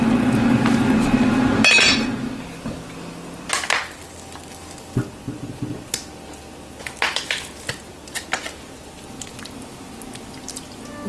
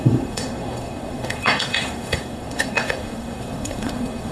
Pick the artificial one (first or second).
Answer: second